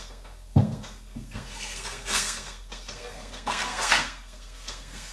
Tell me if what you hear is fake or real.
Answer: fake